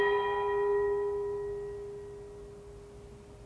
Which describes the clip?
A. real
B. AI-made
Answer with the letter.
A